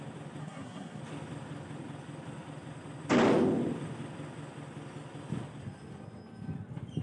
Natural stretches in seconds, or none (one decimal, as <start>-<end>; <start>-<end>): 0.0-0.4; 1.0-7.0